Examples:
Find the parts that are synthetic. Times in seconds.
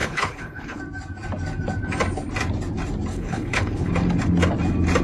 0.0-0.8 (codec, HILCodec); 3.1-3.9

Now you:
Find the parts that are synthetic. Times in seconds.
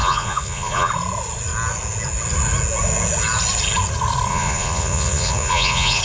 0.0-0.9 (vocoder, Vocos); 4.3-6.0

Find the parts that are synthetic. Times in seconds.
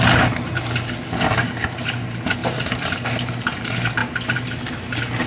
2.4-3.6 (vocoder, BigVGAN v2); 4.0-4.6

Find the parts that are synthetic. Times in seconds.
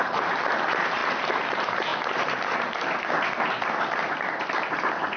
0.0-1.0 (vocoder, BigVGAN v2); 1.5-1.9